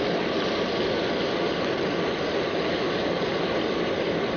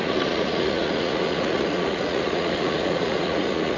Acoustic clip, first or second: first